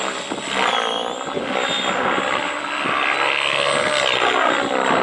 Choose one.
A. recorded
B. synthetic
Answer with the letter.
A